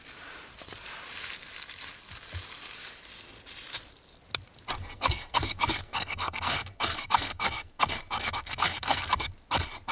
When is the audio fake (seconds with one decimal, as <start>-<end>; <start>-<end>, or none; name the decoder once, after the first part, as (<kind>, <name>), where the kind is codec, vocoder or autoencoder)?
4.8-9.3 (codec, SNAC)